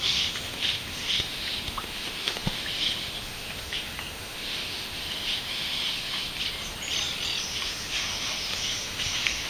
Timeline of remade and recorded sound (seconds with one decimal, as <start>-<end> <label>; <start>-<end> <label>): 0.0-6.3 remade; 6.3-7.4 recorded; 7.4-9.5 remade